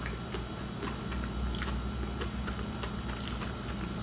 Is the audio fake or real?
real